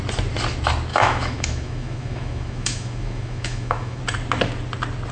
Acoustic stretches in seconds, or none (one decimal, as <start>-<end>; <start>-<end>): 0.0-0.9; 4.0-5.1